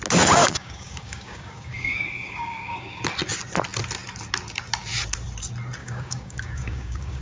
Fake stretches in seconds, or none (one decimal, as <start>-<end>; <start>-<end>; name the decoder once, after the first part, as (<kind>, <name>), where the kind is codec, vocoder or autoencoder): 0.4-3.0 (codec, DAC); 5.8-7.2